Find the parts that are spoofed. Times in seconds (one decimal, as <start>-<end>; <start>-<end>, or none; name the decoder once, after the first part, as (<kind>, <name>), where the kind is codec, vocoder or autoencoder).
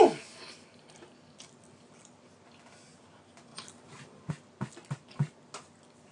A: 3.5-4.3 (vocoder, BigVGAN v2)